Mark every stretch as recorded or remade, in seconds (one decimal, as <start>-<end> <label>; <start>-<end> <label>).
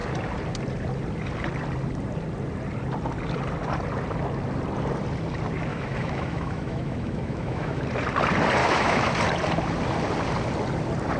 0.0-5.7 recorded; 5.7-7.8 remade; 7.8-8.6 recorded; 8.6-9.1 remade; 9.1-11.2 recorded